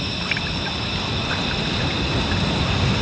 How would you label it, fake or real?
real